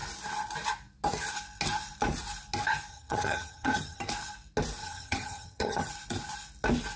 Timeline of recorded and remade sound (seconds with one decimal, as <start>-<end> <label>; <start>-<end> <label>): 0.0-2.9 recorded; 2.9-4.0 remade; 4.0-4.8 recorded; 4.8-5.9 remade; 5.9-7.0 recorded